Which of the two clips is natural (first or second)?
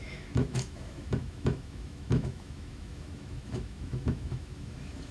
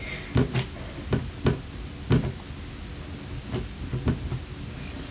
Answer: second